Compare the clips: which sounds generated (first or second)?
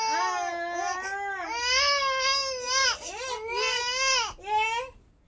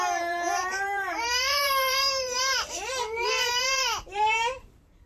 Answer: second